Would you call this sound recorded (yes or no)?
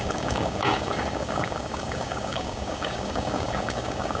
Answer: no